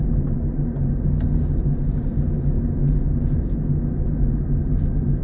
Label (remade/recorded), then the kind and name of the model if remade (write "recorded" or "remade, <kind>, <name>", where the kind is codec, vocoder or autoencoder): recorded